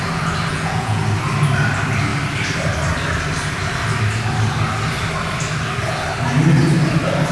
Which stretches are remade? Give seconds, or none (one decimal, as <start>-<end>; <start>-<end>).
0.5-1.0